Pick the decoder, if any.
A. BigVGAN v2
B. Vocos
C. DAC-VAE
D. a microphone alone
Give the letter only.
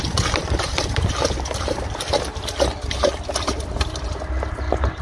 D